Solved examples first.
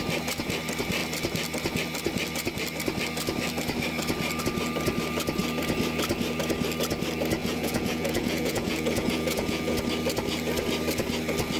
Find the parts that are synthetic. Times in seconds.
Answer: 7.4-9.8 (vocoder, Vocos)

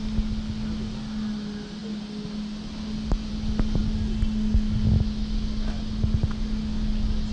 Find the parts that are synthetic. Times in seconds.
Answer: none

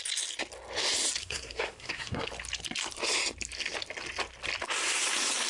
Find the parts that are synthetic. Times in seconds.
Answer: 1.2-2.3 (codec, SNAC)

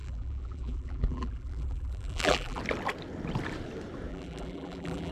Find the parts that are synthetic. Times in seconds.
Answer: 0.0-2.6 (vocoder, BigVGAN v2); 4.1-5.1

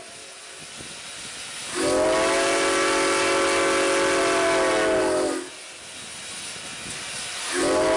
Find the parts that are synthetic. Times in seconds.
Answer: none

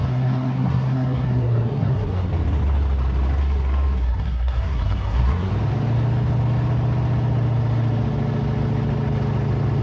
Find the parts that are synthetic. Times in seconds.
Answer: 0.0-2.3 (codec, SNAC); 3.4-5.5

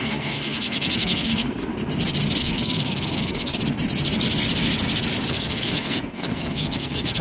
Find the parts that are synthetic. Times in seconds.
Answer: 0.0-1.7 (codec, SNAC); 2.4-3.5; 5.3-7.2